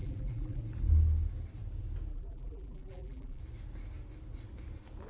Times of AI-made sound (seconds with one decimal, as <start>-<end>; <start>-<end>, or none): 0.0-0.6; 2.1-3.4